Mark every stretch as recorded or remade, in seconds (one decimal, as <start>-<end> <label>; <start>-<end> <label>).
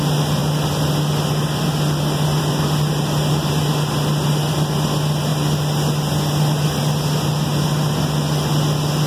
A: 0.0-9.1 recorded